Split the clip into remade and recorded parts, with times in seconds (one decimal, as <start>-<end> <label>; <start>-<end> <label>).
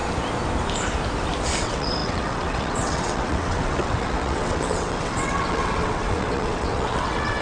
0.0-1.6 recorded; 1.6-7.4 remade